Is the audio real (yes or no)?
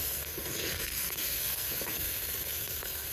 no